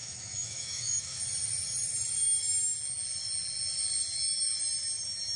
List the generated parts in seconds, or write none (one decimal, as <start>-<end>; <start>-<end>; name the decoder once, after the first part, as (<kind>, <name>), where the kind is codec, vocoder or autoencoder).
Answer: 0.0-1.2 (autoencoder, DAC-VAE)